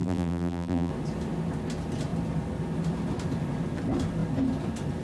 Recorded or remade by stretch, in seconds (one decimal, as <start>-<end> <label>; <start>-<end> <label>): 0.0-0.9 remade; 0.9-5.0 recorded

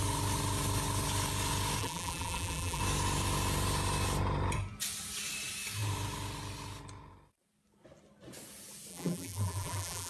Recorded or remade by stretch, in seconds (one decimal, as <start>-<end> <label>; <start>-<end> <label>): 0.0-1.8 recorded; 1.8-2.8 remade; 2.8-8.9 recorded; 8.9-10.1 remade

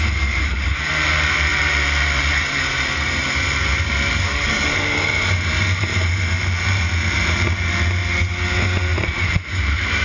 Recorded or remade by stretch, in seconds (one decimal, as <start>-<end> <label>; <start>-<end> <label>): 0.0-8.0 remade; 8.0-9.0 recorded; 9.0-10.0 remade

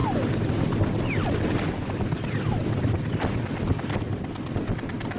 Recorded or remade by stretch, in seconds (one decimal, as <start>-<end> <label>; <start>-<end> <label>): 0.0-5.2 recorded

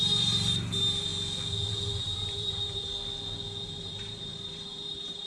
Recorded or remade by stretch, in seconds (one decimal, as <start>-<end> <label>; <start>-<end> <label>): 0.0-1.1 remade; 1.1-2.0 recorded; 2.0-2.9 remade; 2.9-3.6 recorded; 3.6-5.3 remade

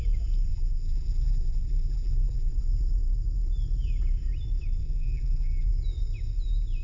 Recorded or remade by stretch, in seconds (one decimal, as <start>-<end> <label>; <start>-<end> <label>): 0.0-0.5 recorded; 0.5-2.5 remade; 2.5-4.8 recorded; 4.8-5.7 remade; 5.7-6.8 recorded

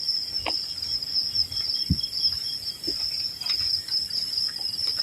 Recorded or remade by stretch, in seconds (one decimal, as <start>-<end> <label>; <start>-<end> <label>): 0.0-5.0 recorded

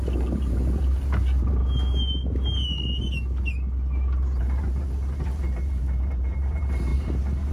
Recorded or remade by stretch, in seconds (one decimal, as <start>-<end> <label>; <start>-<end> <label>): 0.0-1.6 remade; 1.6-4.4 recorded; 4.4-7.5 remade